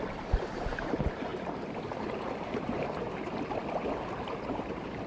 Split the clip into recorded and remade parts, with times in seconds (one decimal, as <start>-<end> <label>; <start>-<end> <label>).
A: 0.0-5.1 remade